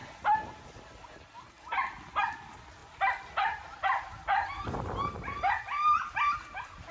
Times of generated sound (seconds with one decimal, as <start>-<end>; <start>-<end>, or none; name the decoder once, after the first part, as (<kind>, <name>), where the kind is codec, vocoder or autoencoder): none